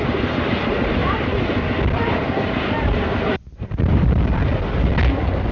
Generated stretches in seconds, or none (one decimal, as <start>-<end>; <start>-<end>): 0.0-1.0; 2.5-4.5